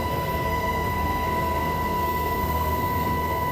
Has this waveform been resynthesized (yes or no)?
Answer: yes